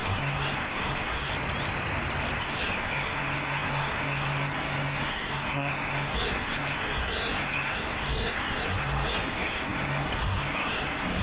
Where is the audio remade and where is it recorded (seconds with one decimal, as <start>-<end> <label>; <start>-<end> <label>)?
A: 0.0-1.3 remade; 1.3-2.4 recorded; 2.4-11.2 remade